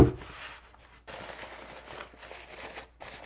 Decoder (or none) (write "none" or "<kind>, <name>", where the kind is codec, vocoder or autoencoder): none